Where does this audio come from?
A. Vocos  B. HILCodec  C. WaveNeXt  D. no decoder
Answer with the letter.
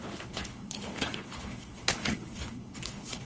B